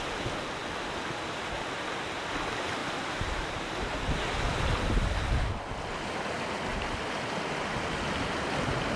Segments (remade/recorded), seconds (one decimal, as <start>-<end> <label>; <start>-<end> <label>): 0.0-2.8 recorded; 2.8-5.5 remade; 5.5-6.7 recorded; 6.7-7.4 remade; 7.4-9.0 recorded